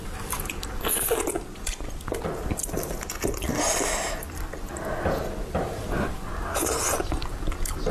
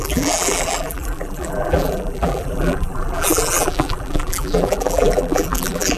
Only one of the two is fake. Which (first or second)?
second